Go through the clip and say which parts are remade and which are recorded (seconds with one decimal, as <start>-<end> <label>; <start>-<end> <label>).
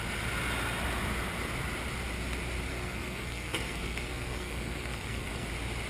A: 0.0-2.7 recorded; 2.7-5.5 remade; 5.5-5.9 recorded